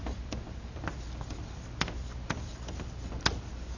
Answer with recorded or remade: recorded